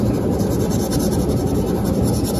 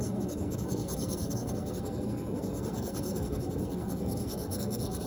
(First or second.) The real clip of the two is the first